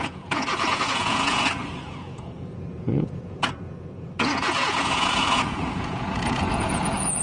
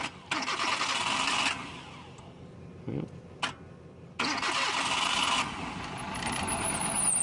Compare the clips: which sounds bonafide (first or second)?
second